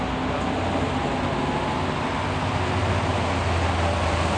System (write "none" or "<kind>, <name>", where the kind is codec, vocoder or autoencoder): none